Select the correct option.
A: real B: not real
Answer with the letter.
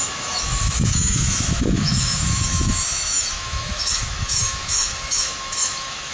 B